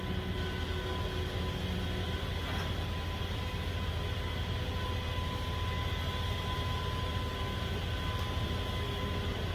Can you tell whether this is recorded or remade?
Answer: recorded